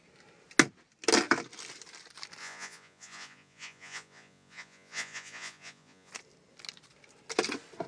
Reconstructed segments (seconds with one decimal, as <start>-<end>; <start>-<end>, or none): 2.4-6.1